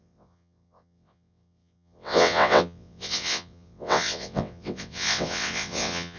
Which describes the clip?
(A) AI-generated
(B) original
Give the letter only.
A